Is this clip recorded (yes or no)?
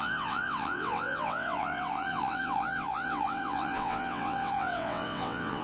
no